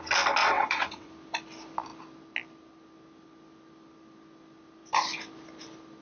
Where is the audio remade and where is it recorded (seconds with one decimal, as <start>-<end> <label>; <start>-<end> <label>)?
0.0-0.4 recorded; 0.4-1.1 remade; 1.1-6.0 recorded